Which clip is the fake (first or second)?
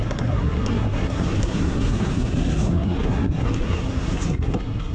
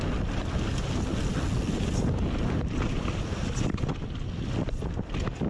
first